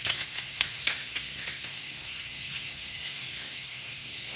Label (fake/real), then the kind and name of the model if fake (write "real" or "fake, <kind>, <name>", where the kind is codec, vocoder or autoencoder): fake, codec, SNAC